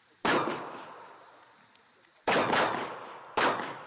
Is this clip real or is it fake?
real